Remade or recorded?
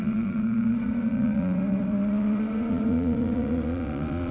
remade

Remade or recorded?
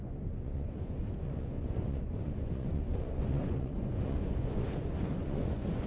remade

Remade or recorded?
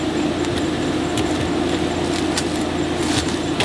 recorded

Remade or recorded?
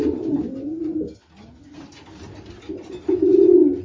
recorded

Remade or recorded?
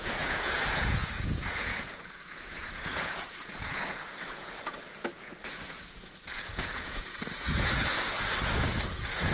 remade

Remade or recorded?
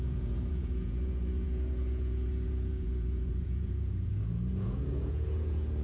remade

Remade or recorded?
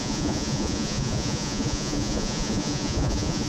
remade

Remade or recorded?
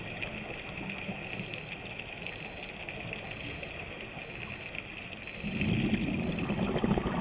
recorded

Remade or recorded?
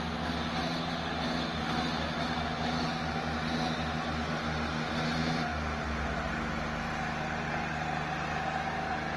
recorded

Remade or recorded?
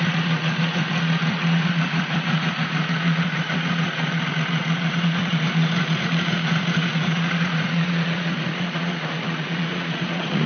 remade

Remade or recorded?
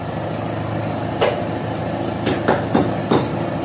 recorded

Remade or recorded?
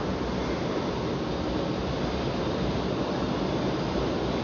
recorded